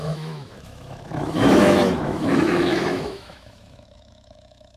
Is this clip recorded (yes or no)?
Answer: no